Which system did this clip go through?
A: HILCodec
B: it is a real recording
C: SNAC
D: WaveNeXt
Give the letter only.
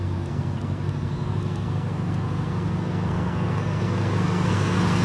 C